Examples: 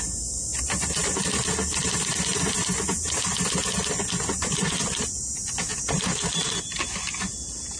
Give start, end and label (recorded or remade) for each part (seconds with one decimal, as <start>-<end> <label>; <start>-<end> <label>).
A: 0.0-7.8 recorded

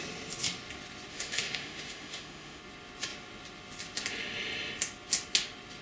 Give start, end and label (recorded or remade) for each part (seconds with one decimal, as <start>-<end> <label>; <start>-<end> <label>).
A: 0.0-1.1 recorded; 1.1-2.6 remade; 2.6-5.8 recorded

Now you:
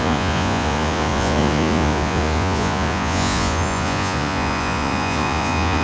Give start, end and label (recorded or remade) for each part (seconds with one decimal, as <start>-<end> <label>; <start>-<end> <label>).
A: 0.0-5.8 remade

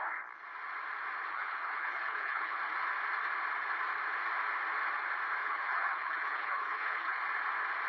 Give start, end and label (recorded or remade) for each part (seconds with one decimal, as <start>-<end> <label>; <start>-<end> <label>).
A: 0.0-1.3 recorded; 1.3-2.6 remade; 2.6-5.4 recorded; 5.4-7.2 remade; 7.2-7.9 recorded